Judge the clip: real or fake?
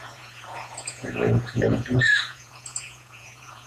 fake